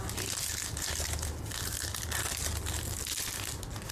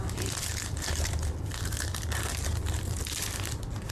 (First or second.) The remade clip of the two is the second